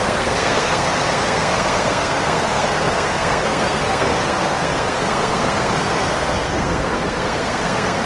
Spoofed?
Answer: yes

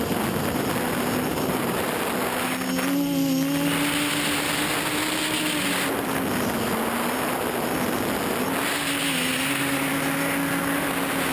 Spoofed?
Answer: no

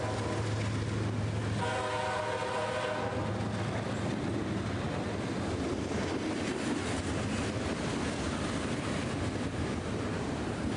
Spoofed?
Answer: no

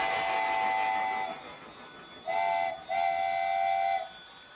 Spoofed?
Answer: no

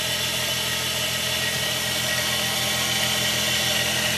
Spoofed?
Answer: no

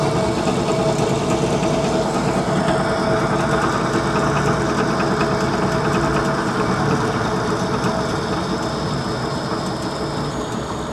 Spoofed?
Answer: no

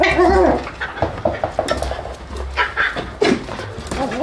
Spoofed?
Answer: no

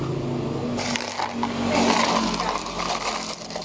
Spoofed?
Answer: no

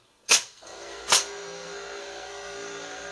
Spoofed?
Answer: yes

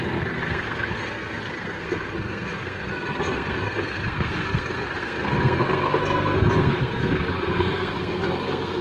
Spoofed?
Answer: yes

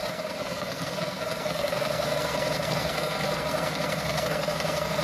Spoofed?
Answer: yes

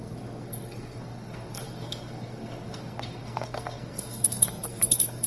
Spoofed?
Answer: yes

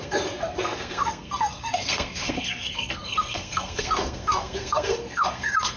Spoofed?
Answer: yes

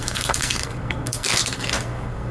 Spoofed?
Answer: yes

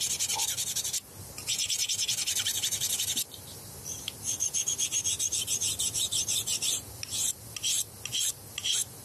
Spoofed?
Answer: no